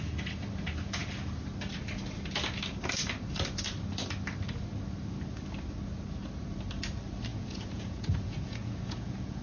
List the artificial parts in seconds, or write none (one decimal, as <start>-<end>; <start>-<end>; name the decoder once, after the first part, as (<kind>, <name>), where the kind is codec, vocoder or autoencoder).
7.3-9.4 (vocoder, Vocos)

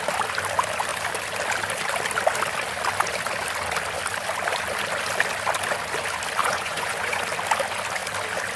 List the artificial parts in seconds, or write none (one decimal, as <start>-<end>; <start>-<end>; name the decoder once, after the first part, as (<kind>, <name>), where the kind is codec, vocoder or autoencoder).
6.4-7.2 (vocoder, Vocos)

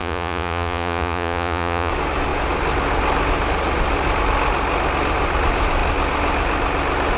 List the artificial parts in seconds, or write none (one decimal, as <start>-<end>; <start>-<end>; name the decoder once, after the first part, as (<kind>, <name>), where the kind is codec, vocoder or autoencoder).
0.0-1.9 (vocoder, Vocos)

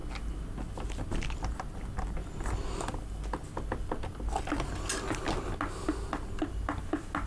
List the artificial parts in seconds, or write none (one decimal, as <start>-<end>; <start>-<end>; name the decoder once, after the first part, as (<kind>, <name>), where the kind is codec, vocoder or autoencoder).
none

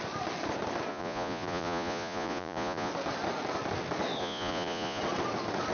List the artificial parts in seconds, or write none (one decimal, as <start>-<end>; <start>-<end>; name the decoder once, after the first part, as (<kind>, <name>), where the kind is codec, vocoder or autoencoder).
0.9-2.9 (vocoder, Vocos); 4.2-5.0

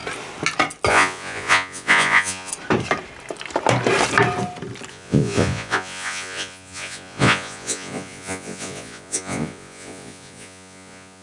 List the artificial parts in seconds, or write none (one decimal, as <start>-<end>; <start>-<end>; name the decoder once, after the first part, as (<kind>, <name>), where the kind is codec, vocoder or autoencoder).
0.9-2.5 (vocoder, Vocos); 4.9-11.2

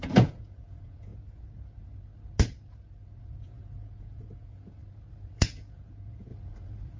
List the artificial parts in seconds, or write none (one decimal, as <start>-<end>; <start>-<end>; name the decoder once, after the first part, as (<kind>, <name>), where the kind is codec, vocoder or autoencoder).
0.0-1.1 (vocoder, Vocos); 3.2-4.8; 5.3-6.3

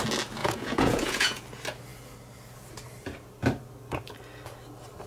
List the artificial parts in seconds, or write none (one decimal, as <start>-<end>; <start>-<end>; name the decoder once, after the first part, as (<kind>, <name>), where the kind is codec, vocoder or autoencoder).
0.4-1.4 (vocoder, Vocos)